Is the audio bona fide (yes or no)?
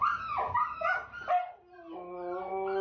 yes